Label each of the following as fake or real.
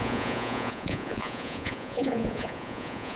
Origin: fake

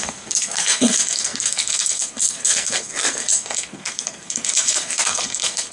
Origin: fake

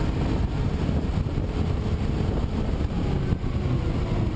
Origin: real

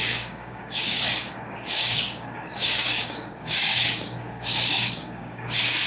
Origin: fake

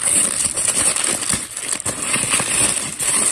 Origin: fake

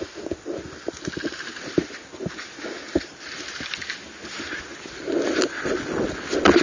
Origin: real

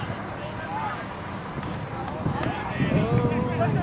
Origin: real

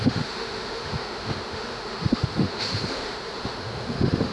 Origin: fake